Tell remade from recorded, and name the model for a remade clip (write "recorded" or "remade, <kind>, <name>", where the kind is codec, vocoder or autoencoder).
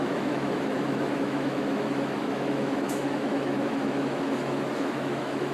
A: remade, autoencoder, DAC-VAE